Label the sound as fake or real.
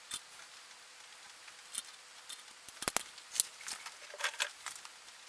real